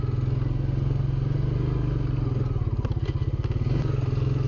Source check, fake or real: real